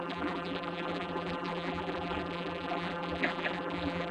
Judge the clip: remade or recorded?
remade